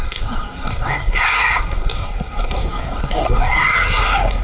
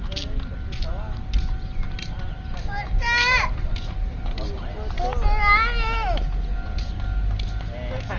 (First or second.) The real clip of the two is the second